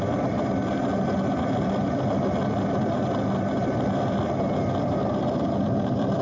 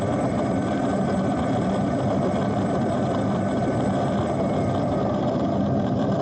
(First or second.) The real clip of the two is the first